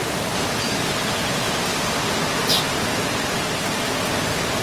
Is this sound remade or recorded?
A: recorded